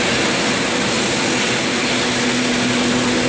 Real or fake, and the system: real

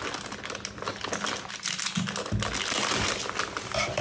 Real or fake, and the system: real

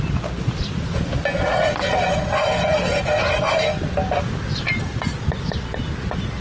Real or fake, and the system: real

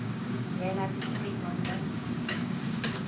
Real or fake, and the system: fake, codec, DAC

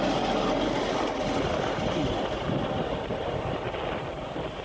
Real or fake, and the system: real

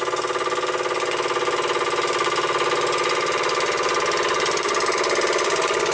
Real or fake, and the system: real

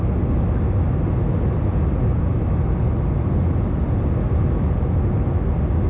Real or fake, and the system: real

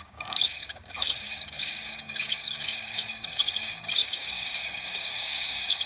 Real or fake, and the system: fake, codec, DAC